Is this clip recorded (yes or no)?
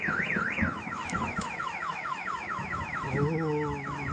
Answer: no